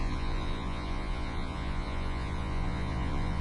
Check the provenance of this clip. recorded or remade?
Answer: remade